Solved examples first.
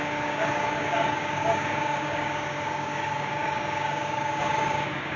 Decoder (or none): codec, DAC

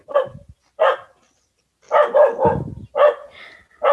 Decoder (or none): none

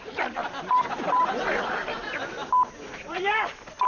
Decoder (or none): none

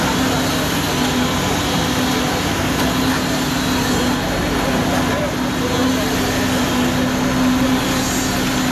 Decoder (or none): none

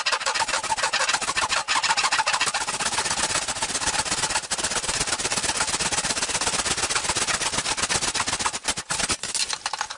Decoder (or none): none